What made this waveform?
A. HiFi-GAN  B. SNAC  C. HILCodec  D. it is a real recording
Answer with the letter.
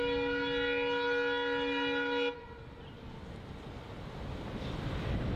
D